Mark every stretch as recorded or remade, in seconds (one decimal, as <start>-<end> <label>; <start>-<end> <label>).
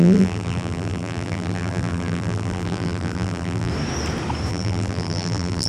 0.0-3.7 remade; 3.7-4.5 recorded; 4.5-5.7 remade